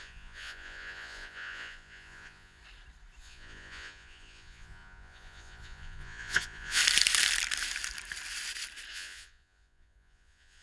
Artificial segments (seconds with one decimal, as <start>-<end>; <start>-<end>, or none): 0.0-2.6; 3.2-6.8; 8.9-10.6